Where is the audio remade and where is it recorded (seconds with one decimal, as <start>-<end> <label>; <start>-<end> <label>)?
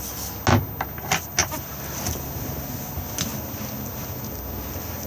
0.0-5.1 recorded